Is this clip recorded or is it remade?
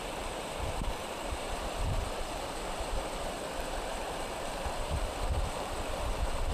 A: remade